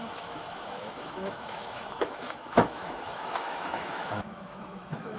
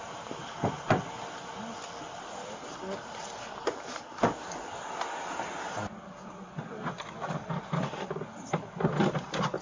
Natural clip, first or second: second